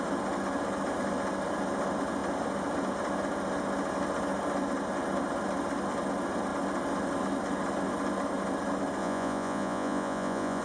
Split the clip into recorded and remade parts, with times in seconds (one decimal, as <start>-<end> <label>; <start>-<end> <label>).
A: 0.0-9.0 recorded; 9.0-10.6 remade